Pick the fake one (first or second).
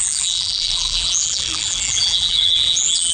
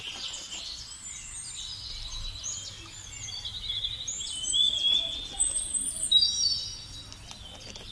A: first